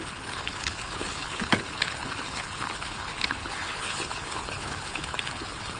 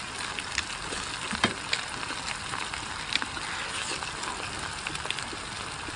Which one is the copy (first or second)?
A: first